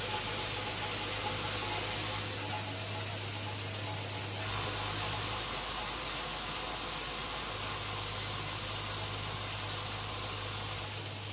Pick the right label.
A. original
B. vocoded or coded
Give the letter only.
A